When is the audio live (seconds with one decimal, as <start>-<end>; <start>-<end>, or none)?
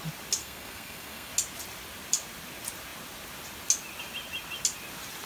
0.0-0.4; 1.3-5.3